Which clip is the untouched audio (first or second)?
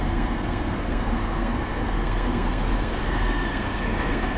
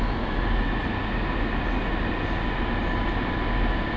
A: second